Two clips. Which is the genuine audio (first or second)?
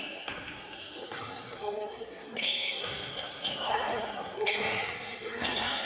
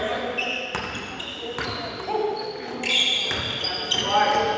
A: second